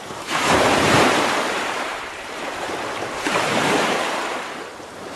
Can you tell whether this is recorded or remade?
remade